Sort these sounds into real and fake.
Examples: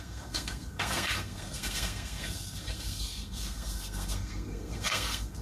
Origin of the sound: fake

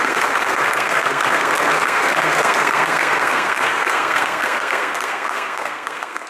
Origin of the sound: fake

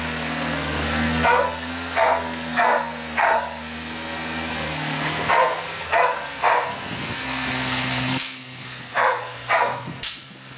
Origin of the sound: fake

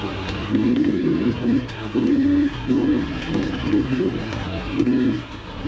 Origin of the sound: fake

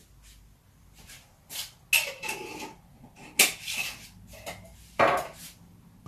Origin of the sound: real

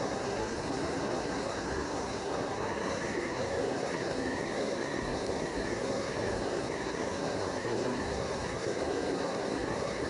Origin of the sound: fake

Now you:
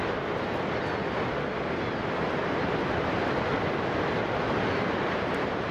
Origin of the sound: real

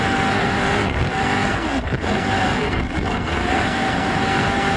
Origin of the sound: fake